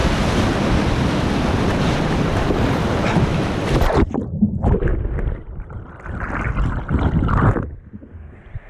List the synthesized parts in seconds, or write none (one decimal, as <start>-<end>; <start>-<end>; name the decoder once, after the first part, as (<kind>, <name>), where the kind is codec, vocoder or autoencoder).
1.9-3.3 (vocoder, BigVGAN v2); 4.3-4.9